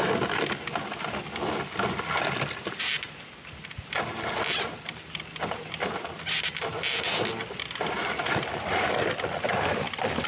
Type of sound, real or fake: real